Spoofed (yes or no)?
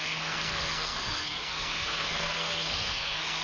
yes